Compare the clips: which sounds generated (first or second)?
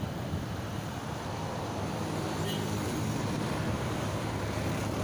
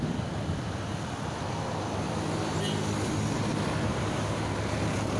first